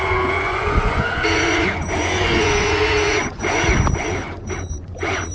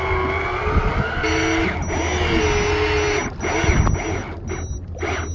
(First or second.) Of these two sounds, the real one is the second